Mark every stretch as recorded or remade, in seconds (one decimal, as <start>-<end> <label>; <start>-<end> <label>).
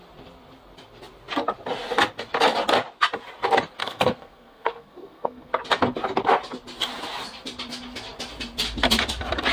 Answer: 0.0-3.8 recorded; 3.8-5.5 remade; 5.5-9.5 recorded